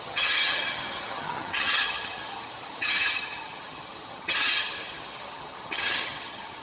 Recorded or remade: remade